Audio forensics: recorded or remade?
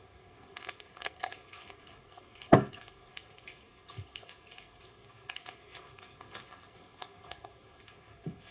remade